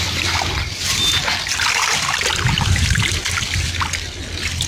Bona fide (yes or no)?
yes